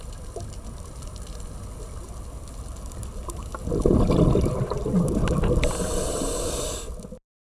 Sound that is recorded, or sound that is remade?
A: remade